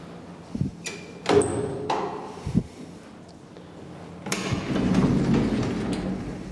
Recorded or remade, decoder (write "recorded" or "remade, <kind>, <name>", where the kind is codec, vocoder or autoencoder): recorded